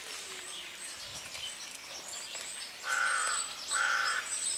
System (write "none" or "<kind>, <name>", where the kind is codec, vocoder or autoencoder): none